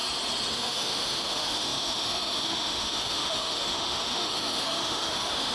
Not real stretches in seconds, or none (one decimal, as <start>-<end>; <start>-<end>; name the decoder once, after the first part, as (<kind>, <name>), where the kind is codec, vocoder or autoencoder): 0.5-5.5 (autoencoder, DAC-VAE)